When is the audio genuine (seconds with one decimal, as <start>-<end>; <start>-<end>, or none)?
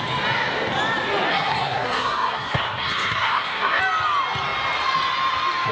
0.0-1.3; 3.8-5.7